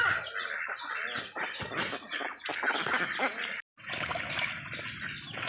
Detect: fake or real real